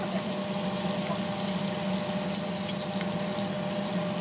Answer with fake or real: real